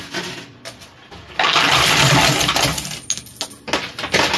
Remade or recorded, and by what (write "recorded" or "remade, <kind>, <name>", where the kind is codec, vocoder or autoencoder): recorded